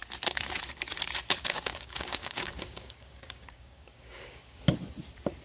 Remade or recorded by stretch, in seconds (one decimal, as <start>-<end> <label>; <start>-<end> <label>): 0.0-1.4 recorded; 1.4-4.6 remade; 4.6-5.4 recorded